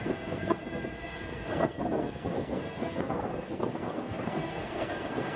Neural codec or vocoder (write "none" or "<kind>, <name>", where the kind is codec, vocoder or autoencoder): codec, SNAC